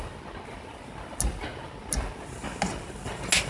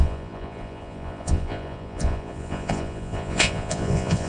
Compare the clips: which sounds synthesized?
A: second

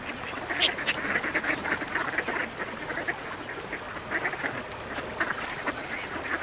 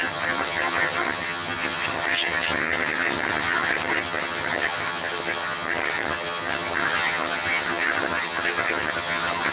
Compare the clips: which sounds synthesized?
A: second